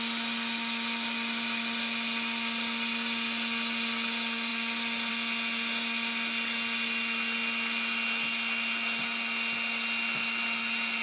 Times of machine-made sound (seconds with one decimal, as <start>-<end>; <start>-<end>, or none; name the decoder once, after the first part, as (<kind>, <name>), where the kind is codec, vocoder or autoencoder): none